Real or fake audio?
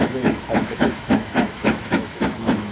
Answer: fake